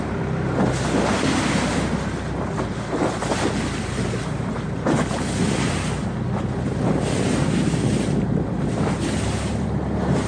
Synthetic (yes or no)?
no